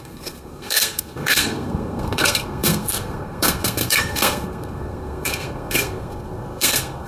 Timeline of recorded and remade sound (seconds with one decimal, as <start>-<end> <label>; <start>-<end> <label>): 0.0-7.1 remade